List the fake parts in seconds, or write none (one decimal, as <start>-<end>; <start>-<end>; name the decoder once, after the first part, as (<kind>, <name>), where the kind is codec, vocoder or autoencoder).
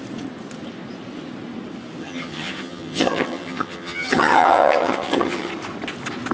2.0-5.5 (vocoder, HiFi-GAN)